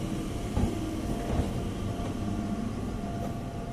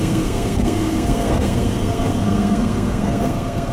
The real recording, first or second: first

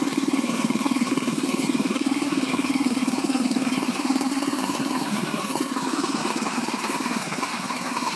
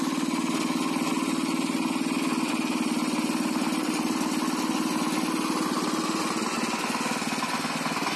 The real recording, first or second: second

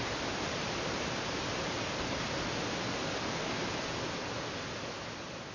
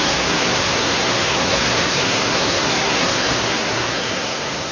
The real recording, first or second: first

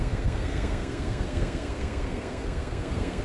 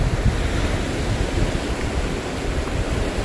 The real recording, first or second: second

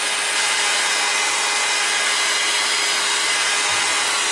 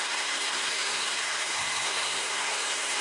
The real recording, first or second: first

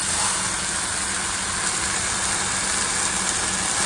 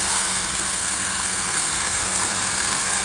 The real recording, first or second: first